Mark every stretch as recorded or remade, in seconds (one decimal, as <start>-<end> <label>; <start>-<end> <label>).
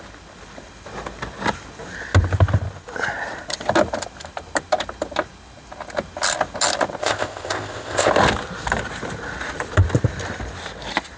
0.0-7.0 recorded; 7.0-8.1 remade; 8.1-11.2 recorded